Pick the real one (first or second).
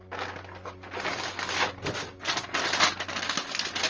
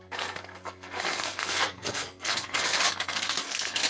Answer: first